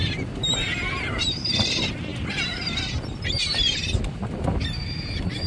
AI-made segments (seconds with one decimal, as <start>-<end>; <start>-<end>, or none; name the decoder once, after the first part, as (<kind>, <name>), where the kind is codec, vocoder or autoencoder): none